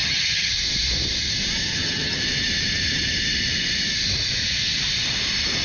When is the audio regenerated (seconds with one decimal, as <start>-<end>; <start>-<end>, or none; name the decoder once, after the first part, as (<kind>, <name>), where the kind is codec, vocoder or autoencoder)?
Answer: 0.0-0.5 (vocoder, HiFi-GAN); 1.7-2.2